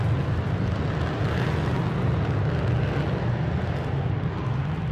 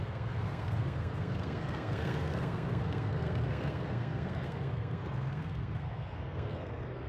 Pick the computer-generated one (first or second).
second